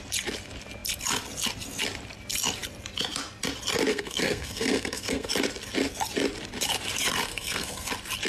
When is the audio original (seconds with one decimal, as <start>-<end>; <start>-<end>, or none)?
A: 0.0-3.9; 5.3-7.3; 7.9-8.3